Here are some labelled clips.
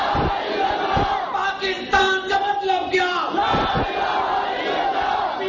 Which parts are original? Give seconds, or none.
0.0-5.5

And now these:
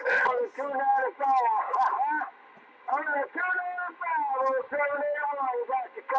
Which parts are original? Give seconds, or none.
0.0-6.2

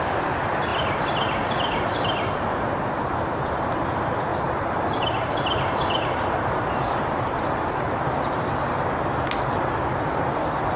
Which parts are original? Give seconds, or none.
0.0-0.7; 3.4-4.3; 7.4-10.8

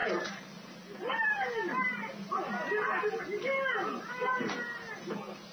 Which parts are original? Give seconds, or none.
2.1-5.5

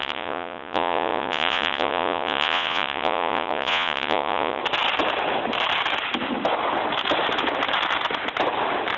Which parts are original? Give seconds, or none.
4.6-9.0

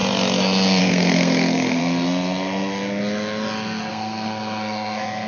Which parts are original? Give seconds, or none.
0.0-0.8; 1.8-3.9

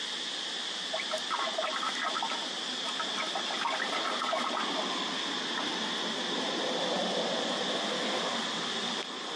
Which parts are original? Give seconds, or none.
5.0-8.4

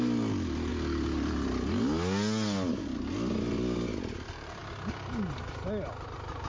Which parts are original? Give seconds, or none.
0.0-6.5